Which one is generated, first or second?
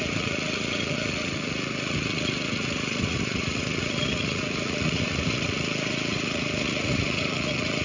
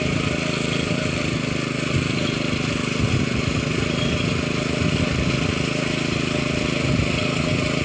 first